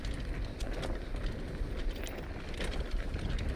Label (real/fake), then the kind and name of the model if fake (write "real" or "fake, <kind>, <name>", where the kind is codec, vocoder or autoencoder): real